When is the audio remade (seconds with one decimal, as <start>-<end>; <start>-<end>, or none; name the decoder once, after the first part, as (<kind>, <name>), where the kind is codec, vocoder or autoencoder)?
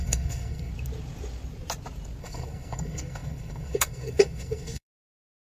0.0-0.7 (codec, SNAC); 2.2-5.5